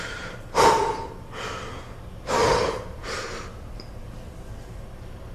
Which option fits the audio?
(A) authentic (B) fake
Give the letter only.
A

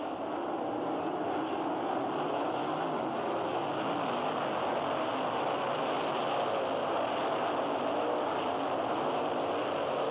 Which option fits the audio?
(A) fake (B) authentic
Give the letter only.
B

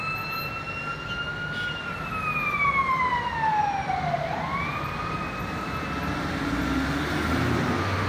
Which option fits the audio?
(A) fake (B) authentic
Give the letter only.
B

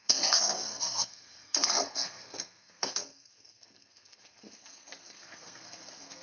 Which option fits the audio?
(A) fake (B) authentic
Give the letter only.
A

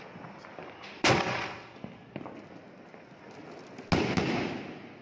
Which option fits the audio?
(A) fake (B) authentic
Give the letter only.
B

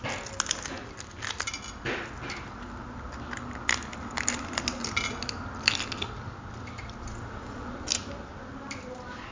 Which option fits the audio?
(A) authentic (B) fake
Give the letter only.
A